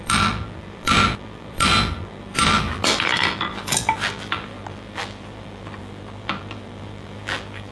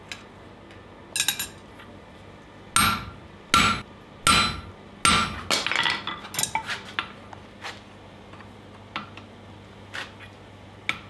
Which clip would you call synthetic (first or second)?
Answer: first